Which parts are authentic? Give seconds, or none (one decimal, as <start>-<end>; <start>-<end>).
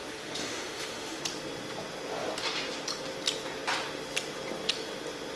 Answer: 1.2-5.4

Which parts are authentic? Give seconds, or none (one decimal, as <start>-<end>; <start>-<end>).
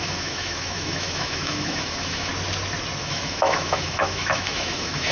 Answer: 2.3-3.0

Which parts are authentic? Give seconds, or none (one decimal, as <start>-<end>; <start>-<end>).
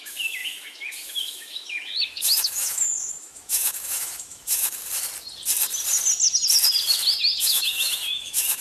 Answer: 4.8-7.4